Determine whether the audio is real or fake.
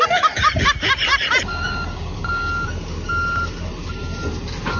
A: real